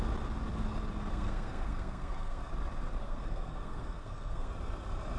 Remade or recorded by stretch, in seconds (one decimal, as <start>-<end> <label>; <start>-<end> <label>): 0.0-1.1 recorded; 1.1-2.5 remade; 2.5-3.0 recorded; 3.0-4.5 remade; 4.5-5.2 recorded